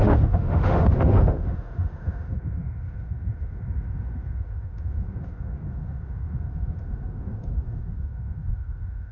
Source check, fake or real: fake